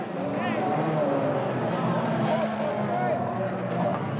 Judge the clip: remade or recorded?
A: recorded